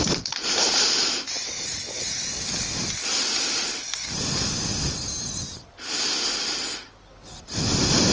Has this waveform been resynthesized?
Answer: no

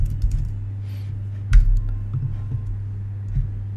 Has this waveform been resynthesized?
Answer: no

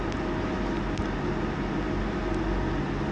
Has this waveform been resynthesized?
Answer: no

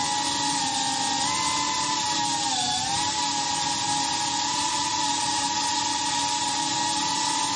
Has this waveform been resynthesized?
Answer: no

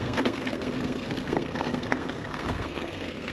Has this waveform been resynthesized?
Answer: yes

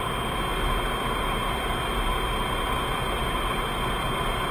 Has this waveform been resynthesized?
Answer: no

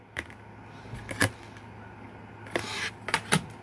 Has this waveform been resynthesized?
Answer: no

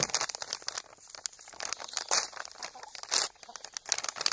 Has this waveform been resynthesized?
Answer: no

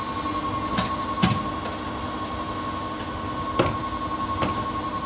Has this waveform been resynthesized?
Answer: no